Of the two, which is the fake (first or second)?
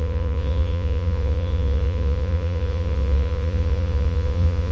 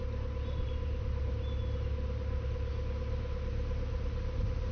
first